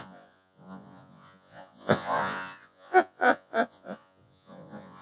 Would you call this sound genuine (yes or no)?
no